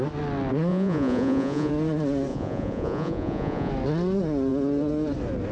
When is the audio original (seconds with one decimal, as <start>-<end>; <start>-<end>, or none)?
0.0-0.7; 1.7-2.3; 3.7-5.5